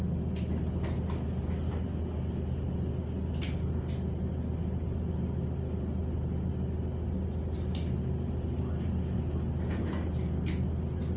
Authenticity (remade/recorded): recorded